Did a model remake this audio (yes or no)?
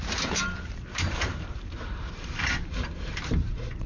yes